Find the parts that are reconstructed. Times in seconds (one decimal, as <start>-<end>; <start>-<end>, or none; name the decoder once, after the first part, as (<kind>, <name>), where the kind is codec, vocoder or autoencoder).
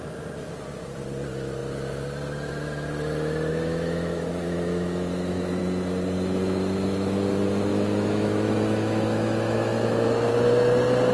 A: 3.5-5.6 (autoencoder, DAC-VAE); 7.7-10.3